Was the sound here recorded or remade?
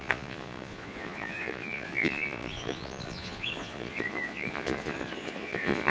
remade